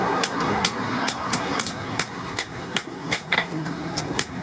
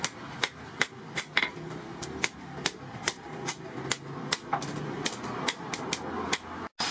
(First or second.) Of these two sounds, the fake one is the first